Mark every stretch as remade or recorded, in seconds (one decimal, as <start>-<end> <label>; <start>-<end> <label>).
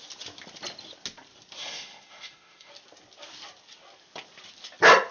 0.0-1.6 recorded; 1.6-2.7 remade; 2.7-5.1 recorded